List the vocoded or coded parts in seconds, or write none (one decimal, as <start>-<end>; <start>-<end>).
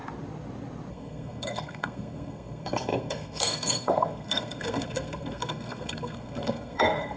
0.9-7.2